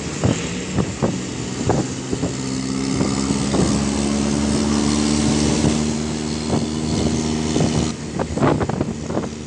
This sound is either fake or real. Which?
real